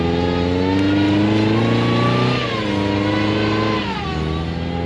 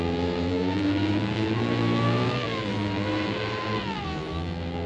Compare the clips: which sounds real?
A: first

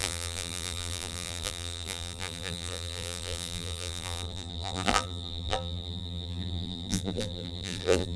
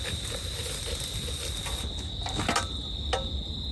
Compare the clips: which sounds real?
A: second